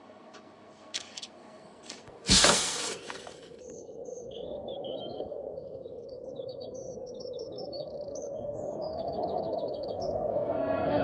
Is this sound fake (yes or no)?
yes